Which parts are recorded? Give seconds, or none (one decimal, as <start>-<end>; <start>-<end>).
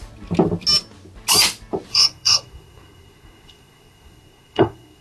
0.0-1.9